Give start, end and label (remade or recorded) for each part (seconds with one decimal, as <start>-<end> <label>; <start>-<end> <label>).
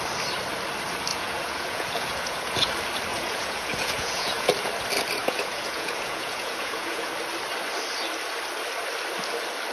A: 0.0-1.1 recorded; 1.1-2.7 remade; 2.7-3.1 recorded; 3.1-4.5 remade; 4.5-5.2 recorded; 5.2-7.1 remade; 7.1-9.7 recorded